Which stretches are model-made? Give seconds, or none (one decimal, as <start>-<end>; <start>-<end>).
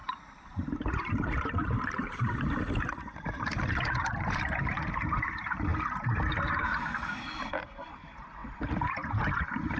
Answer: 0.0-5.7; 6.6-9.8